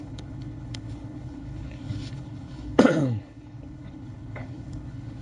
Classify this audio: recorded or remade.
remade